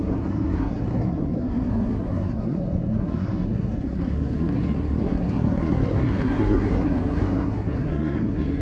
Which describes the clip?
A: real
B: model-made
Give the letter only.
B